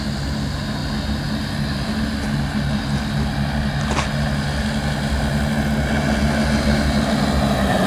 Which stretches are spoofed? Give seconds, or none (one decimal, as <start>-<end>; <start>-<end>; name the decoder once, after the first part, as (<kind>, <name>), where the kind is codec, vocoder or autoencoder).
none